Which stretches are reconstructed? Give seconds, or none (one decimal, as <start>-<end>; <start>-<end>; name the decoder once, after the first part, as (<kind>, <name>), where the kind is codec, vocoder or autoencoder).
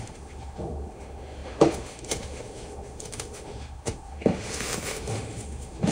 0.0-5.9 (autoencoder, DAC-VAE)